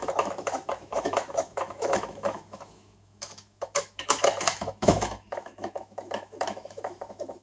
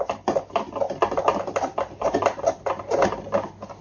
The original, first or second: second